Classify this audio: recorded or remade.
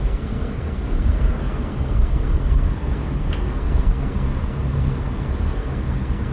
remade